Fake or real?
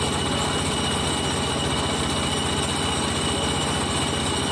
real